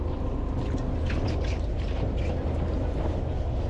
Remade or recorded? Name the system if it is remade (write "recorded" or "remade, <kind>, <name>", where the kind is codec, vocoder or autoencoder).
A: recorded